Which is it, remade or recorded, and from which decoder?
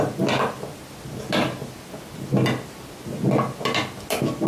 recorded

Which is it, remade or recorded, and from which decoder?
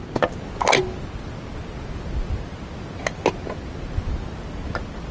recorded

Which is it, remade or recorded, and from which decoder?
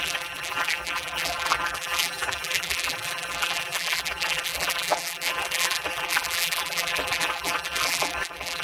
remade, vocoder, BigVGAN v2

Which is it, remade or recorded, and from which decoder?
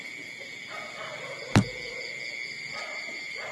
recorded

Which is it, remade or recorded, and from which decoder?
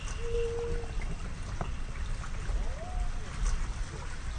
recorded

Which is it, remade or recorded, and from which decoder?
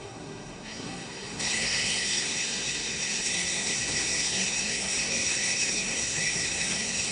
remade, codec, SNAC